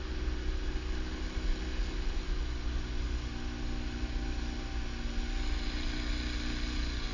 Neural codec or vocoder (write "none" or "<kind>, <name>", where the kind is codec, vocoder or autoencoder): none